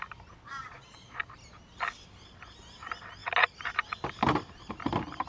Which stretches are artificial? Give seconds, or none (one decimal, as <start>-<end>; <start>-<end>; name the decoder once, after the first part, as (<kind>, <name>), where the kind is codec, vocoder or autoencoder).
0.6-1.2 (vocoder, Vocos)